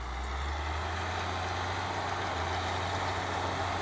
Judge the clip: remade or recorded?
recorded